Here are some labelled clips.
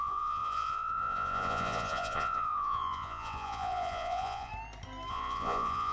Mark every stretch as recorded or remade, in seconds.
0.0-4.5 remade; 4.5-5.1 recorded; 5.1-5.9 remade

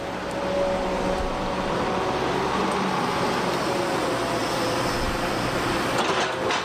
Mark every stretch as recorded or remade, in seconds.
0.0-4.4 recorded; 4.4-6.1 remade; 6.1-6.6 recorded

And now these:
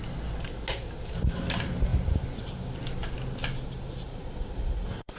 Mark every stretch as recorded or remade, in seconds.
0.0-4.1 recorded; 4.1-5.2 remade